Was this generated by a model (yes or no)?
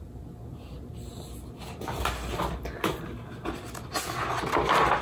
no